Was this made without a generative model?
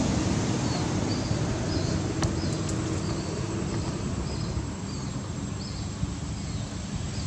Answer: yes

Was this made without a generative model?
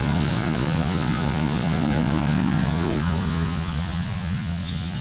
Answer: no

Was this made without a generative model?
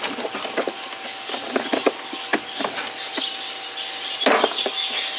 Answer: yes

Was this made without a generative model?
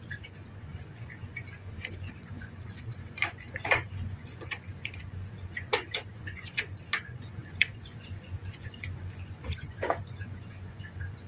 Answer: no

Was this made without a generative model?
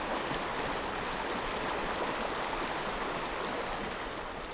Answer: yes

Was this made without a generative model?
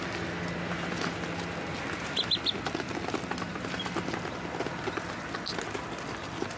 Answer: yes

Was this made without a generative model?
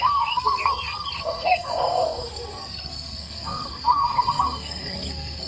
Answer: no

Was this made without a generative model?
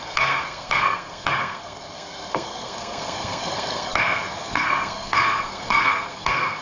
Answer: no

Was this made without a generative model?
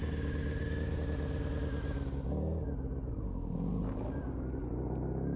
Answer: yes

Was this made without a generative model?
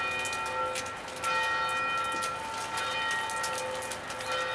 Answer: yes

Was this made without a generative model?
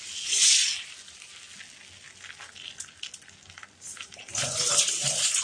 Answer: yes